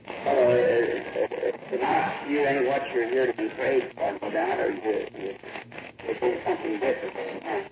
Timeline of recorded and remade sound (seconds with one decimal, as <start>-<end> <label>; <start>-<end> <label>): 0.0-0.7 remade; 0.7-1.5 recorded; 1.5-2.4 remade; 2.4-4.0 recorded; 4.0-4.6 remade; 4.6-5.4 recorded; 5.4-7.7 remade